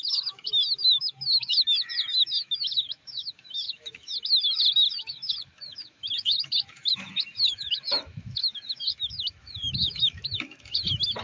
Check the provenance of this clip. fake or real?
fake